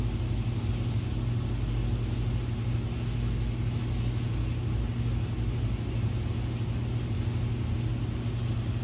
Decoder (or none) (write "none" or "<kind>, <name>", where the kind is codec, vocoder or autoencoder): none